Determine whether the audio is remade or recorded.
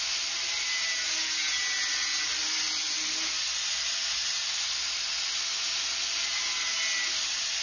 recorded